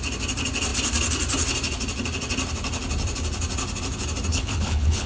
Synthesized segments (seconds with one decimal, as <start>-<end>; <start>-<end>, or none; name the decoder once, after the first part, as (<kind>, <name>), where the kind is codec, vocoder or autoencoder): 4.3-5.1 (codec, HILCodec)